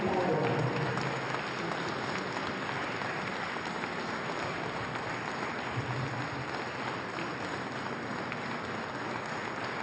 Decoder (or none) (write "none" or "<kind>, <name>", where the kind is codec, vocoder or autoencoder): none